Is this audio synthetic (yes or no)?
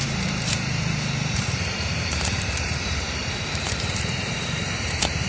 yes